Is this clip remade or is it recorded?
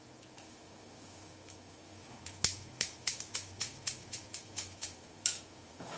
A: remade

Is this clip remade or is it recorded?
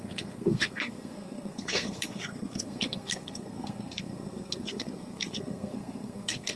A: remade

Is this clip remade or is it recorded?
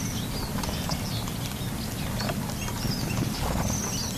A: recorded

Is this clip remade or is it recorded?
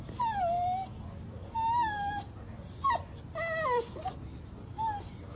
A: recorded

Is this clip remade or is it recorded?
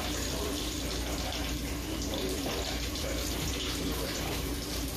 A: remade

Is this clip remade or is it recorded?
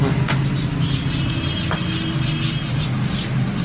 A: recorded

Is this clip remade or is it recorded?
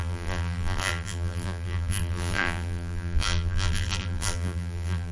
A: remade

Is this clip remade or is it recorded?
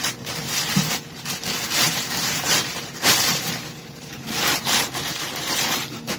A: remade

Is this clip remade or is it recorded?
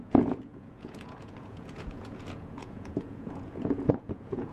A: remade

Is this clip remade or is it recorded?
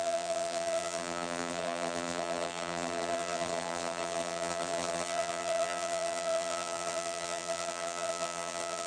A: remade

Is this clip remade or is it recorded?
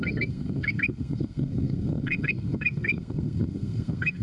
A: remade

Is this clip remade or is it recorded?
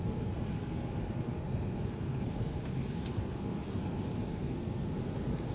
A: remade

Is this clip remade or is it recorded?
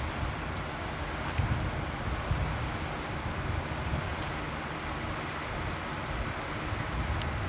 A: recorded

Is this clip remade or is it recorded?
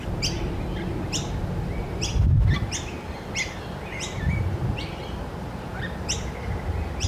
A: recorded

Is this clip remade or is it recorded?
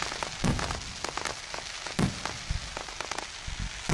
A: recorded